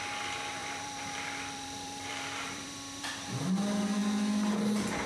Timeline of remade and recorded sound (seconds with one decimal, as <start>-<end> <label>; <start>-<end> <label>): 0.0-0.6 recorded; 0.6-3.3 remade; 3.3-5.1 recorded